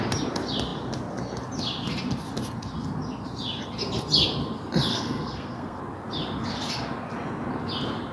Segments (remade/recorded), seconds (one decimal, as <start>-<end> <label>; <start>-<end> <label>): 0.0-4.9 recorded; 4.9-5.8 remade; 5.8-8.1 recorded